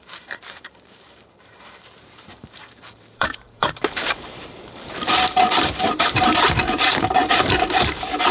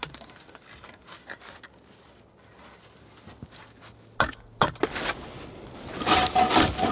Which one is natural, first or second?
second